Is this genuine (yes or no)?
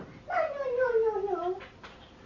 yes